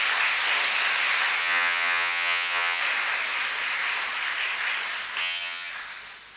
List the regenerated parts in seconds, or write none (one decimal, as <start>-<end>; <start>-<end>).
1.4-2.8; 5.2-5.7